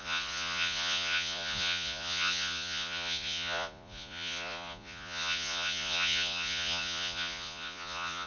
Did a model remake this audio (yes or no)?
yes